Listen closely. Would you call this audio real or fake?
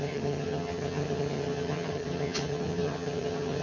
fake